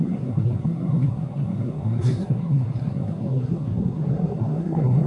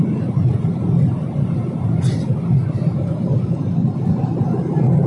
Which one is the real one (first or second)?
second